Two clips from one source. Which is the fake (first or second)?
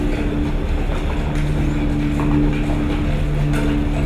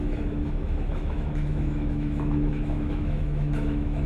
second